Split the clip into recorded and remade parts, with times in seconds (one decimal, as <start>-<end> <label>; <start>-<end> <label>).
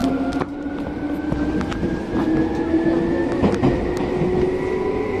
0.0-5.2 recorded